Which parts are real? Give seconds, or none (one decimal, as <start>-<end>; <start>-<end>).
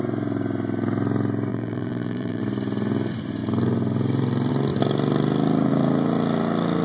0.0-1.5; 2.4-6.8